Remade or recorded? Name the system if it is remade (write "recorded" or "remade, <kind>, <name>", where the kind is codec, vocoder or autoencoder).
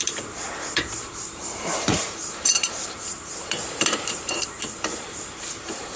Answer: remade, vocoder, BigVGAN v2